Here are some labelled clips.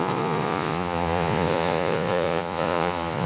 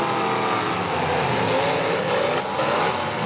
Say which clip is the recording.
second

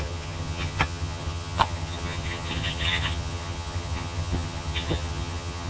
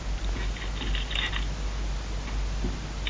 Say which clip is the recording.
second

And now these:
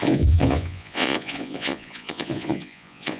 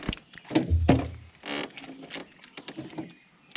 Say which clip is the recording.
second